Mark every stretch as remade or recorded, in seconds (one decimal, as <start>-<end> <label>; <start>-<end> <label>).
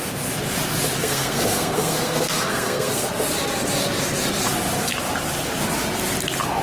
0.0-1.0 recorded; 1.0-3.1 remade; 3.1-6.6 recorded